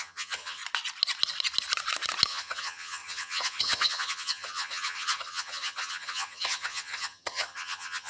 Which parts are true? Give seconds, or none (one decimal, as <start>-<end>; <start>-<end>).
0.6-2.3